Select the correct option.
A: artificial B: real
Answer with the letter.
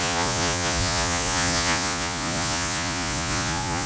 A